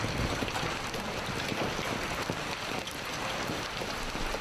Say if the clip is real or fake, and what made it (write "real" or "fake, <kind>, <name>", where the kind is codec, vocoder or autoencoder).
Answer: real